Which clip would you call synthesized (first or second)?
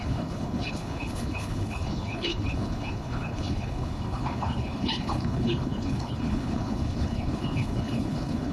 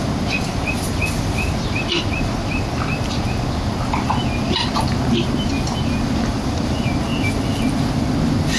first